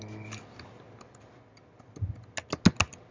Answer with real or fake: real